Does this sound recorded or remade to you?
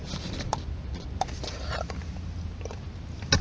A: recorded